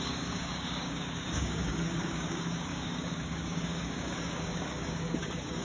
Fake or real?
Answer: fake